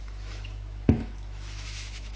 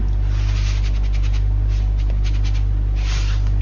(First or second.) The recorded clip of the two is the second